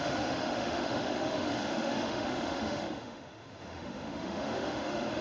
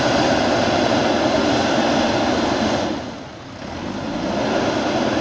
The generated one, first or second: first